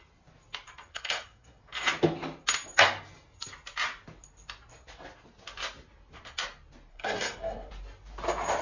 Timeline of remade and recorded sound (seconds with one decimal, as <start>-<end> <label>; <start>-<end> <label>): 0.0-0.9 recorded; 0.9-1.6 remade; 1.6-6.9 recorded; 6.9-7.7 remade; 7.7-8.6 recorded